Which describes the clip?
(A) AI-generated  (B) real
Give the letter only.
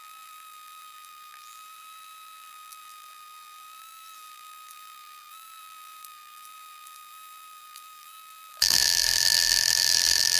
A